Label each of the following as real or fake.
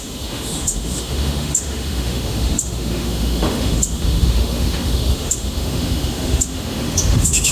fake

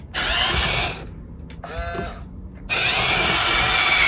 real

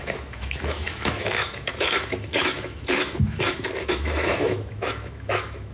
fake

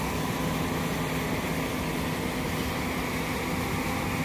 real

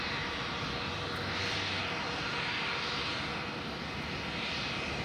real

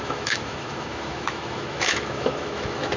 fake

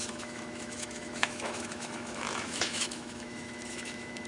fake